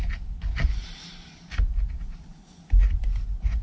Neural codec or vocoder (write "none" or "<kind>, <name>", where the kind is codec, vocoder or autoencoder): none